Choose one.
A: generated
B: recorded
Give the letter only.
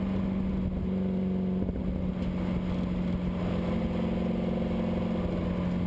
B